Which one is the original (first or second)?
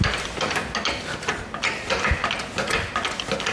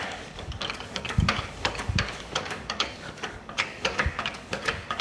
first